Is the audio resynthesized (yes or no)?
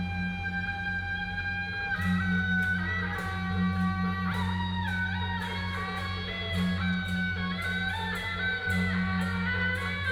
no